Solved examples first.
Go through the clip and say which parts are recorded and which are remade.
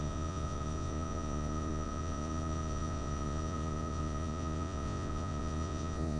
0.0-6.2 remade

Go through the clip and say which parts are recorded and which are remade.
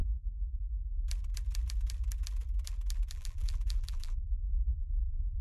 0.0-3.1 recorded; 3.1-5.4 remade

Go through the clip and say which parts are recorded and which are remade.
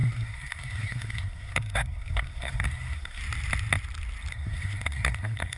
0.0-3.2 remade; 3.2-4.3 recorded; 4.3-5.6 remade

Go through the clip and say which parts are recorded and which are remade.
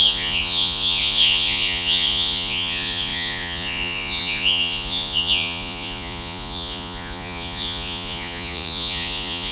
0.0-9.5 remade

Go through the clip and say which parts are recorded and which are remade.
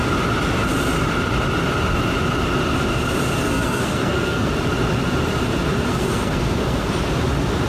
0.0-3.4 recorded; 3.4-4.5 remade; 4.5-5.9 recorded; 5.9-6.9 remade; 6.9-7.7 recorded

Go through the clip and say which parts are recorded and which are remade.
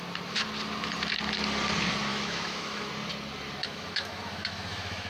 0.0-2.1 recorded; 2.1-2.9 remade; 2.9-3.6 recorded; 3.6-5.1 remade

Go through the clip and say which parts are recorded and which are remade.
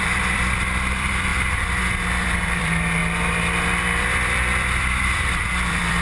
0.0-3.0 remade; 3.0-3.7 recorded; 3.7-6.0 remade